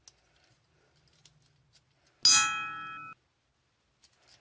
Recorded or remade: recorded